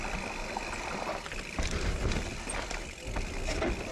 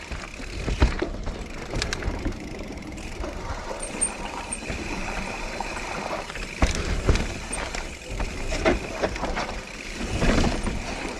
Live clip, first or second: first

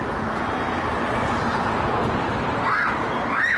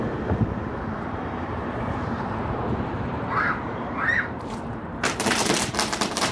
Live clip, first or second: first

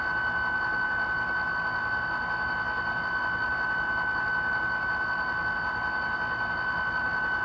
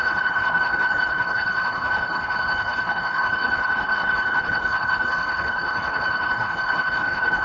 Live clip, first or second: first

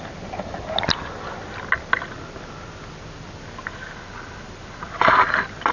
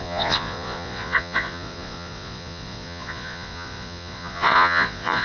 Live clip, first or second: first